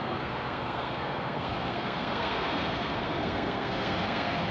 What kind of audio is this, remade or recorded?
remade